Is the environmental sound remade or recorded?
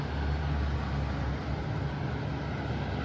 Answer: recorded